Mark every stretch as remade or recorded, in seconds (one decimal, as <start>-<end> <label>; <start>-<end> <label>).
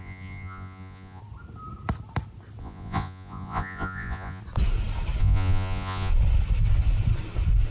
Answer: 0.0-1.2 remade; 1.2-2.6 recorded; 2.6-4.4 remade; 4.4-5.2 recorded; 5.2-6.1 remade; 6.1-7.7 recorded